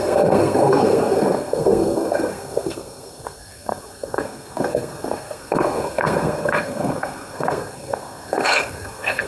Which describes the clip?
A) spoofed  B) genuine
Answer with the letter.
A